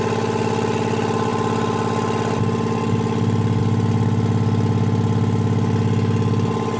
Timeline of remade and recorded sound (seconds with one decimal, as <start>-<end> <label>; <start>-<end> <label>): 0.0-6.8 recorded